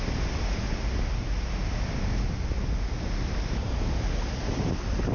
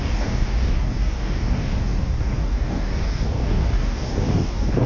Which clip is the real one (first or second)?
first